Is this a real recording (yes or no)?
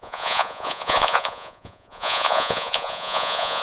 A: no